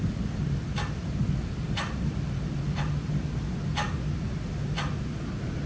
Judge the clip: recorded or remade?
recorded